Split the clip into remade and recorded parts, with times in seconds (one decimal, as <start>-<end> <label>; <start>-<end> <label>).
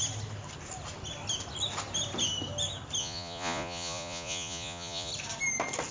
0.0-3.0 recorded; 3.0-5.1 remade; 5.1-5.9 recorded